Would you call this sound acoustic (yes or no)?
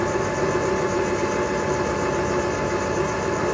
yes